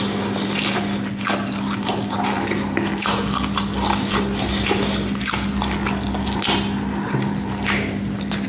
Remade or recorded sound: recorded